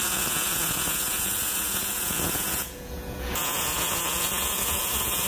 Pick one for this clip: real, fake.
fake